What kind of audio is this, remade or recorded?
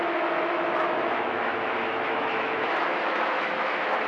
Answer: remade